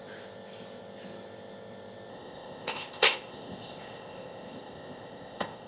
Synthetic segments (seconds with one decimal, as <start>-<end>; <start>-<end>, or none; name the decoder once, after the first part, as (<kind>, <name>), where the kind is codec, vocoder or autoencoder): 2.1-5.7 (codec, ZipCodec)